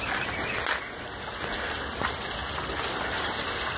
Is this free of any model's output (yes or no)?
yes